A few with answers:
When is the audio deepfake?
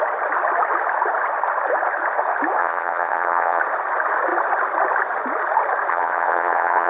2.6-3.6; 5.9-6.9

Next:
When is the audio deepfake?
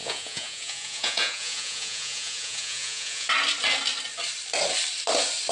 0.0-3.3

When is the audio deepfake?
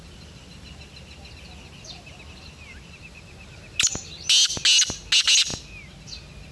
none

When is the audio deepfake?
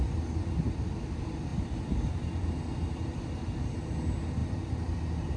none